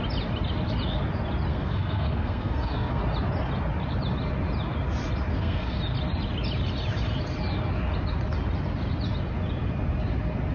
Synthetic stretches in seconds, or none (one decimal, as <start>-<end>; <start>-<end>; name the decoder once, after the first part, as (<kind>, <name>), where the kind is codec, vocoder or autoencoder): 1.5-3.0 (codec, SNAC); 5.3-5.8